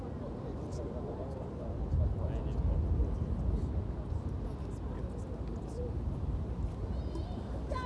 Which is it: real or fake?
real